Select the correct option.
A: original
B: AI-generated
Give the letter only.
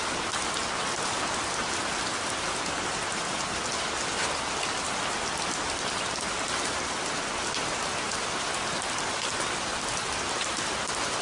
A